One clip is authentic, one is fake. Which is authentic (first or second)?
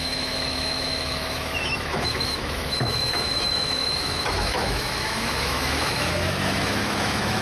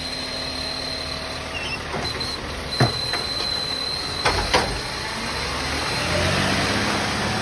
second